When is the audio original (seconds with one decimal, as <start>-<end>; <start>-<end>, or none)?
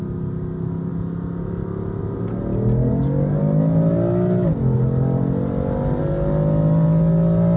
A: 0.0-7.6